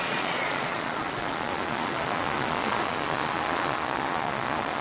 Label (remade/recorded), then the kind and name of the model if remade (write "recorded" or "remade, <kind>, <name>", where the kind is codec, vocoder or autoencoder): remade, vocoder, Vocos